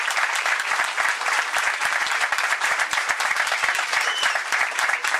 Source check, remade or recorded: remade